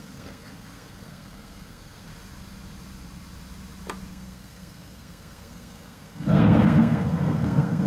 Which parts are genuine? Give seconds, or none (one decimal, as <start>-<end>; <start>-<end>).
2.1-4.1